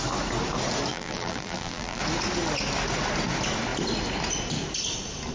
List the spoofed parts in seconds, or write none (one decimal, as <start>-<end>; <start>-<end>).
0.9-2.0